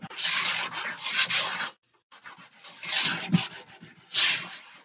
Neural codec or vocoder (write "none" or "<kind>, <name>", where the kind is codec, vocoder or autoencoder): none